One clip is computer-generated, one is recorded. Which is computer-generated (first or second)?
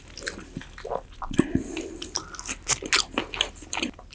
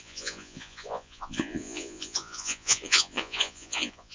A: second